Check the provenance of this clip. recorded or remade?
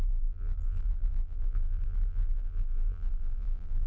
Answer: remade